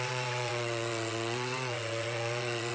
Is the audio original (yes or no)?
no